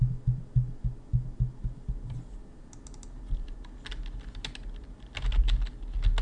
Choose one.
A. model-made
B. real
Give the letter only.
B